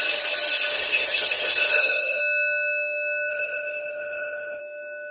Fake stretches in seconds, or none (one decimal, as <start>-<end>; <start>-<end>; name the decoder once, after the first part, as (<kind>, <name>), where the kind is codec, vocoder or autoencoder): 0.7-2.2 (codec, HILCodec); 3.3-4.6